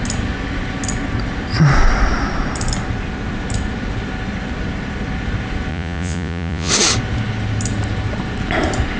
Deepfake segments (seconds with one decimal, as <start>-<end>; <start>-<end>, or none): 5.7-6.7